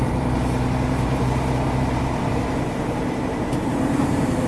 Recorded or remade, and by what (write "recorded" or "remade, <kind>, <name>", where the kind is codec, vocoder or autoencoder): remade, vocoder, BigVGAN v2